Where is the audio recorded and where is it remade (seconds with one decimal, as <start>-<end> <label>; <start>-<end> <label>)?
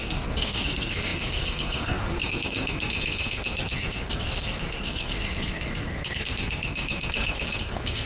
0.0-8.1 remade